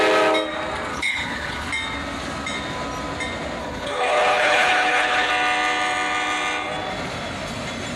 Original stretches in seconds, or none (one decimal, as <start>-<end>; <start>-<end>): 0.0-0.9; 1.7-3.6; 5.3-8.0